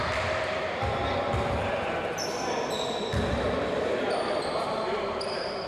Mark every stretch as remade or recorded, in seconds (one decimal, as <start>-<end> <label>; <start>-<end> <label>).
0.0-0.9 remade; 0.9-1.8 recorded; 1.8-3.1 remade; 3.1-4.0 recorded; 4.0-5.7 remade